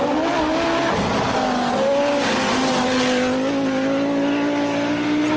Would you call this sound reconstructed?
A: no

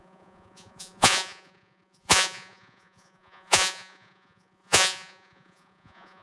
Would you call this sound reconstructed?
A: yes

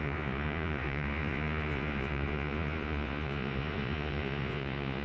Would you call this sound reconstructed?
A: yes